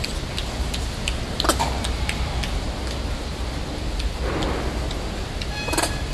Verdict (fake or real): real